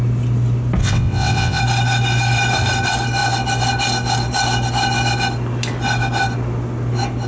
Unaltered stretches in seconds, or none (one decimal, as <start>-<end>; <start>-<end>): 0.0-0.8; 1.6-7.3